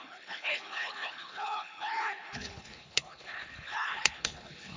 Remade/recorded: remade